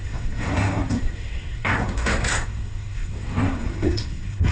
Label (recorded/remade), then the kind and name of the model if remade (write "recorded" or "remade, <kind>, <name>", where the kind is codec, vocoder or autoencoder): remade, codec, SNAC